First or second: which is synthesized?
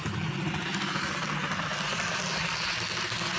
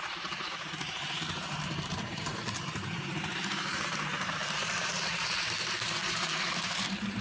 second